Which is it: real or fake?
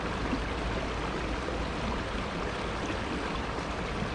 real